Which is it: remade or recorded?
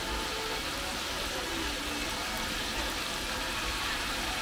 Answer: recorded